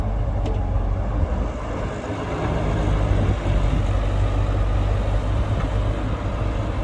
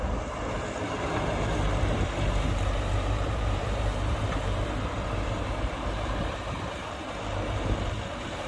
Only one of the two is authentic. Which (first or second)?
first